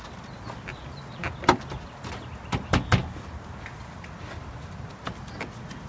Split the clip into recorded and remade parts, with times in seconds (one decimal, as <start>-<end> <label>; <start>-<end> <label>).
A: 0.0-5.9 recorded

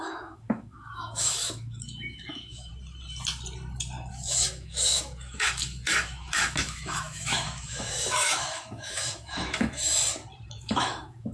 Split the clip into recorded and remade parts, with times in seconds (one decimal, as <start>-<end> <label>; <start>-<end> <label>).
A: 0.0-2.7 remade; 2.7-4.1 recorded; 4.1-10.0 remade; 10.0-10.5 recorded; 10.5-11.3 remade

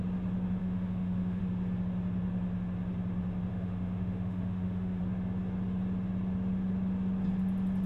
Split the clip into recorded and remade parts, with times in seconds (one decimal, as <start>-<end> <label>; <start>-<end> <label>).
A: 0.0-0.6 recorded; 0.6-1.4 remade; 1.4-3.5 recorded; 3.5-5.0 remade; 5.0-7.9 recorded

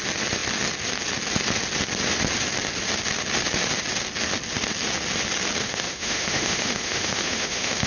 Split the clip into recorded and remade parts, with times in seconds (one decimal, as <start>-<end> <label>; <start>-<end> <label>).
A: 0.0-5.6 recorded; 5.6-7.9 remade